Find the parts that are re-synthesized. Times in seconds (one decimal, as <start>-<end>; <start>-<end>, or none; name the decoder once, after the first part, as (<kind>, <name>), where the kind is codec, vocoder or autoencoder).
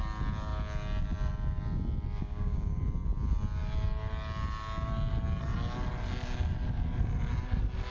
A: 2.2-2.8 (codec, DAC)